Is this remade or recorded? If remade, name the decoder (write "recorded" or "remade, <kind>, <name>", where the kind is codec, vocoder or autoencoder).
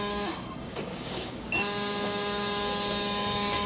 remade, codec, DAC